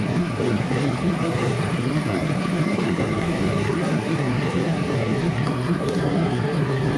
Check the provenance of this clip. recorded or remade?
remade